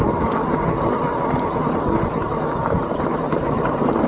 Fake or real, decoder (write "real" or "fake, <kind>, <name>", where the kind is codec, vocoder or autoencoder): real